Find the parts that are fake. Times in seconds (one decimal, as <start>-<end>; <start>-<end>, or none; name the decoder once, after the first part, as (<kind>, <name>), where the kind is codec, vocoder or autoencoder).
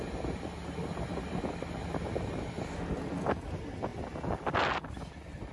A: none